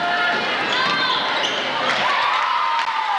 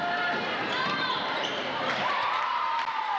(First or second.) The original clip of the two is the first